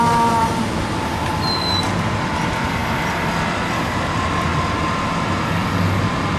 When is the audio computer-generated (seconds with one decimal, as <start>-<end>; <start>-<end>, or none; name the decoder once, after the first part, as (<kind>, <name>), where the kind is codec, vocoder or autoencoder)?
none